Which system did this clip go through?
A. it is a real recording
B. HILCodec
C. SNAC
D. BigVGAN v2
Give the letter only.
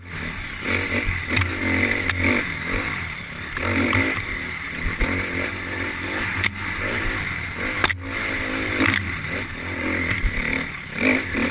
A